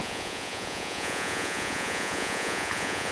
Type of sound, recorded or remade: remade